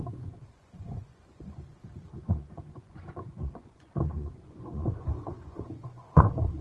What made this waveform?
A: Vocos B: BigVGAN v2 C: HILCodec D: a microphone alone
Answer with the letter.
A